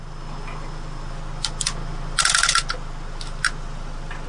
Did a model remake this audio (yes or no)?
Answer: no